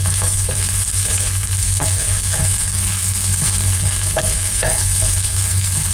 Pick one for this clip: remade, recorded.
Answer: remade